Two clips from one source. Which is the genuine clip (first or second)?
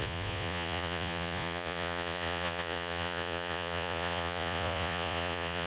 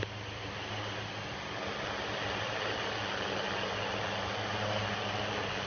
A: second